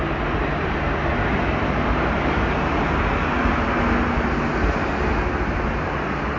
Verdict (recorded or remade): recorded